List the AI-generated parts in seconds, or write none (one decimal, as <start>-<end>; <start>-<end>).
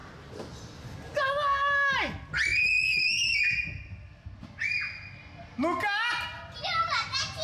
none